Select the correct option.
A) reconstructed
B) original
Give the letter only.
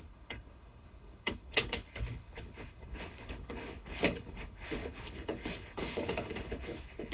A